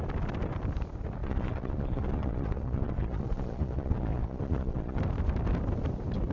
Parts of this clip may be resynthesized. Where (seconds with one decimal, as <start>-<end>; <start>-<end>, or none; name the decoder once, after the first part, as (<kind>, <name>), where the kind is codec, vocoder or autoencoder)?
1.2-5.0 (vocoder, Vocos)